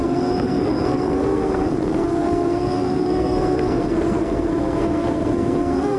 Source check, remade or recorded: remade